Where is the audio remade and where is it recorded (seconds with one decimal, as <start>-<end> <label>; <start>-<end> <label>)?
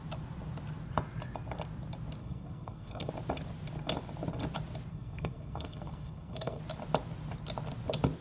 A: 0.0-2.2 recorded; 2.2-3.1 remade; 3.1-4.9 recorded; 4.9-6.6 remade; 6.6-8.2 recorded